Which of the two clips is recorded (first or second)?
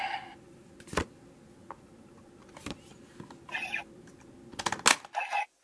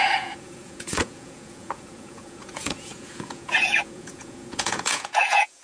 first